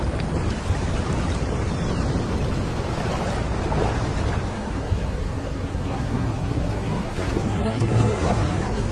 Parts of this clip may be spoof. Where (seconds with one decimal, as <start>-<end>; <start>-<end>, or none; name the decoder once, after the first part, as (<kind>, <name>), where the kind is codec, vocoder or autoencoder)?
4.5-8.9 (codec, SNAC)